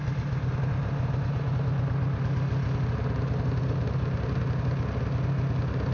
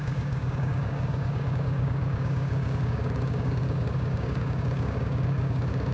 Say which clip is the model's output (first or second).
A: second